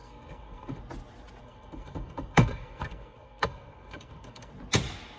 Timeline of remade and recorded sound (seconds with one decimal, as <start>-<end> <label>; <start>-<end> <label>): 0.0-0.8 remade; 0.8-1.4 recorded; 1.4-4.5 remade; 4.5-5.2 recorded

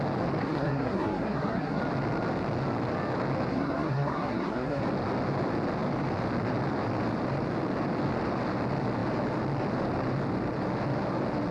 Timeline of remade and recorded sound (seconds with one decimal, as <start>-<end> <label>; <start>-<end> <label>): 0.0-0.4 recorded; 0.4-1.8 remade; 1.8-3.5 recorded; 3.5-4.8 remade; 4.8-11.5 recorded

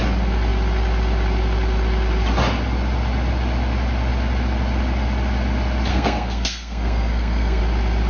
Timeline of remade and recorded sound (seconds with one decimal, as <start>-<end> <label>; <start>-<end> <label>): 0.0-5.9 recorded; 5.9-7.6 remade; 7.6-8.1 recorded

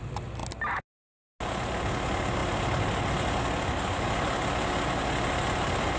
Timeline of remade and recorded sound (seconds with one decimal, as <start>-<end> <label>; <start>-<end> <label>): 0.0-6.0 recorded

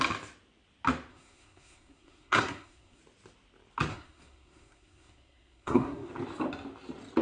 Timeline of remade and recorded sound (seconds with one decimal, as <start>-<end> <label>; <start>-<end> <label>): 0.0-1.1 recorded; 1.1-3.0 remade; 3.0-3.9 recorded; 3.9-6.1 remade; 6.1-7.2 recorded

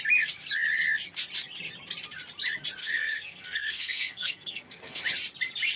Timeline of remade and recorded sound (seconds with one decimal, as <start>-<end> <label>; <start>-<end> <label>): 0.0-2.8 recorded; 2.8-5.0 remade; 5.0-5.8 recorded